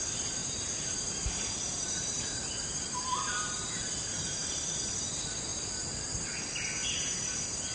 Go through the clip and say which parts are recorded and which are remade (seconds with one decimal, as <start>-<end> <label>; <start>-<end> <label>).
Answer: 0.0-0.4 recorded; 0.4-2.5 remade; 2.5-4.1 recorded; 4.1-4.8 remade; 4.8-7.7 recorded